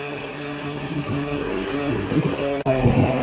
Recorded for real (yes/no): no